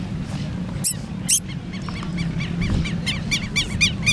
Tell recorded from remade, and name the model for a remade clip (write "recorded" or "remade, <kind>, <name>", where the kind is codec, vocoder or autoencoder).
recorded